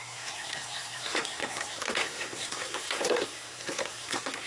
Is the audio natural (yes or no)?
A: no